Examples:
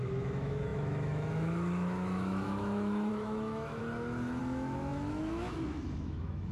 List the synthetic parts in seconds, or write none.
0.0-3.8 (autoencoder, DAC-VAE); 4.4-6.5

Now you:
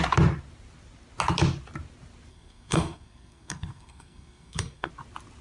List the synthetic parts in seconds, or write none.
2.3-4.9 (codec, SNAC)

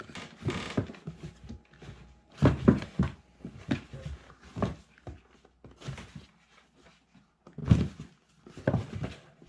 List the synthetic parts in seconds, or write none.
none